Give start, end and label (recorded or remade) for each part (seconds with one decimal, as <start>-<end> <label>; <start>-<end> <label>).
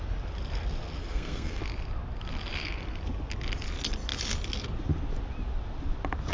0.0-1.0 recorded; 1.0-1.6 remade; 1.6-6.3 recorded